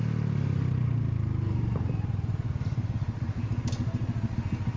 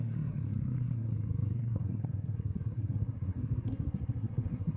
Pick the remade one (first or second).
second